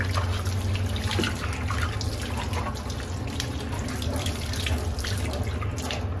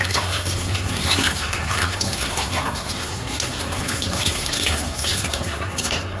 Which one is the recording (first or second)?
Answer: first